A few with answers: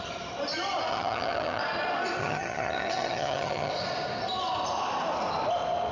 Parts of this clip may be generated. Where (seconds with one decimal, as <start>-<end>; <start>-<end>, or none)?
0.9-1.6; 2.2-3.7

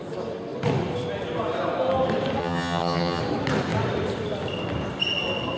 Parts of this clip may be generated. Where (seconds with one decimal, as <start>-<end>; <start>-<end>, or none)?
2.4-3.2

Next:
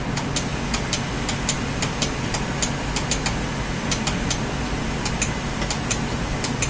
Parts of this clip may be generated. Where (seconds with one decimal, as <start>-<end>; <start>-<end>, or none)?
none

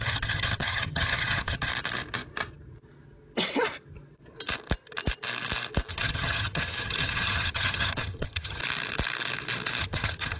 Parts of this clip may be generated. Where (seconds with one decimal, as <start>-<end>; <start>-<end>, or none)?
0.0-1.7; 5.9-8.6; 9.8-10.4

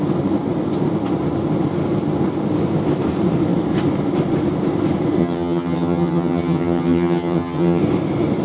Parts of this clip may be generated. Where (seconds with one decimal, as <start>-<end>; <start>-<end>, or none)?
5.2-7.8

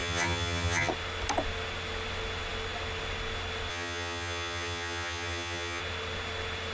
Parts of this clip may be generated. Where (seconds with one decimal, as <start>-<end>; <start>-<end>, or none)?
0.0-0.9; 3.7-5.8

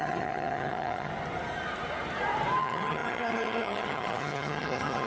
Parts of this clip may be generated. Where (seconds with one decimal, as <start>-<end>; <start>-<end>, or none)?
0.0-1.1; 2.6-5.1

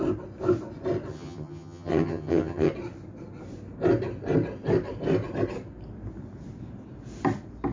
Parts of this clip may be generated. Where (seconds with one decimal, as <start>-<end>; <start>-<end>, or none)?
1.1-2.7